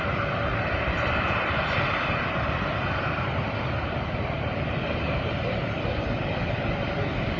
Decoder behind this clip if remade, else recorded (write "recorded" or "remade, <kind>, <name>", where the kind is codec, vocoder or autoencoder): recorded